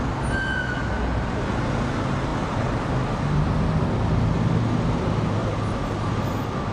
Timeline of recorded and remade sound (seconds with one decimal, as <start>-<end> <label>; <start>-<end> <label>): 0.0-6.7 recorded